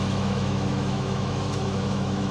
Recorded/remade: remade